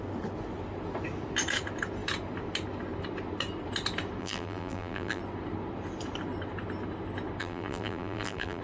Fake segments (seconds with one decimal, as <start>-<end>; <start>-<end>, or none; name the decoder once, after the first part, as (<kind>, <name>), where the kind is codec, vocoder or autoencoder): 4.2-5.2 (vocoder, BigVGAN v2); 7.4-8.6